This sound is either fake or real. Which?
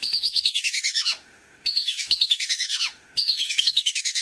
fake